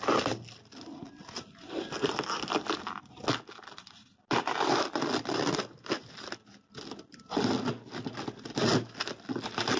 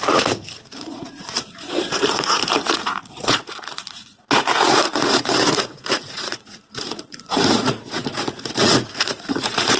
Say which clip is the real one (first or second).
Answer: first